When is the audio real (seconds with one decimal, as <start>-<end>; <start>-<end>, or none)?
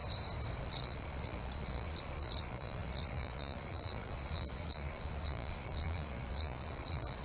0.0-0.6